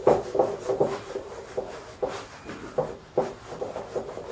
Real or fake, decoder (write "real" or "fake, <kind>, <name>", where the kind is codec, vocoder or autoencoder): real